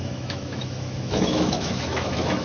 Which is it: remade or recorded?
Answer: remade